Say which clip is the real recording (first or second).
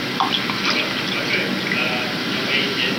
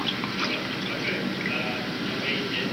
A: first